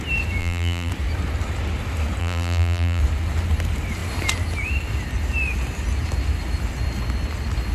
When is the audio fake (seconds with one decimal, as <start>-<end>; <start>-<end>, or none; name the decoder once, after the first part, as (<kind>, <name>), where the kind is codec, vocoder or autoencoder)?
0.4-0.9 (vocoder, BigVGAN v2); 2.2-3.0

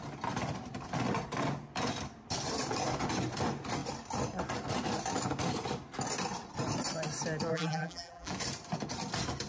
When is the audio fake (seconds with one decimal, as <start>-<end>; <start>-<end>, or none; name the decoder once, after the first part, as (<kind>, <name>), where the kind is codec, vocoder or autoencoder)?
7.5-8.3 (vocoder, BigVGAN v2)